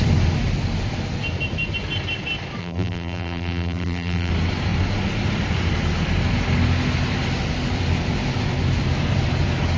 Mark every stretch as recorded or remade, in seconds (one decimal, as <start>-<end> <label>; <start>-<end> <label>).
0.0-2.6 recorded; 2.6-4.3 remade; 4.3-9.8 recorded